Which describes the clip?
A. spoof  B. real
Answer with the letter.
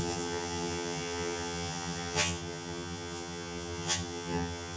A